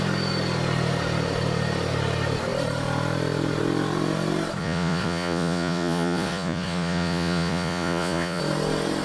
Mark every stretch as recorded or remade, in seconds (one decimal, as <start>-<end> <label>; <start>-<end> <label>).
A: 0.0-4.6 recorded; 4.6-8.4 remade; 8.4-9.0 recorded

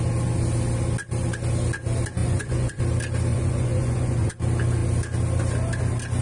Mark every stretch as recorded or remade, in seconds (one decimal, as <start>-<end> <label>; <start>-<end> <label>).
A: 0.0-2.2 recorded; 2.2-2.8 remade; 2.8-3.3 recorded; 3.3-4.3 remade; 4.3-6.2 recorded

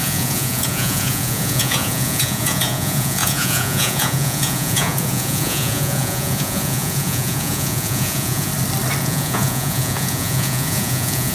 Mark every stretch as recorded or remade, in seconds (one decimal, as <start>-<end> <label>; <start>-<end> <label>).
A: 0.0-8.5 remade; 8.5-9.0 recorded; 9.0-11.3 remade

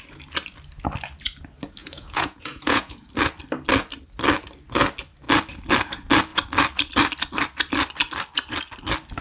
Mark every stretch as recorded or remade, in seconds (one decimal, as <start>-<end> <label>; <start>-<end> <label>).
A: 0.0-1.8 recorded; 1.8-3.1 remade; 3.1-9.2 recorded

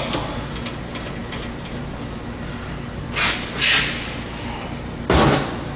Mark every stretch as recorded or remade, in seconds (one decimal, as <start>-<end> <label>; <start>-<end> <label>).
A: 0.0-5.8 recorded

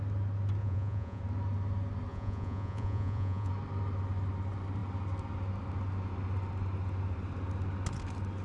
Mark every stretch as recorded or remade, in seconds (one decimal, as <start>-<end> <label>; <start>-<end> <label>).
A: 0.0-0.6 recorded; 0.6-1.2 remade; 1.2-2.1 recorded; 2.1-3.5 remade; 3.5-8.4 recorded

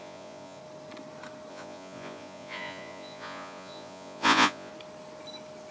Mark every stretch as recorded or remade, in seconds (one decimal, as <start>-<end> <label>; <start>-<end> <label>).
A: 0.0-0.6 remade; 0.6-1.5 recorded; 1.5-4.7 remade; 4.7-5.7 recorded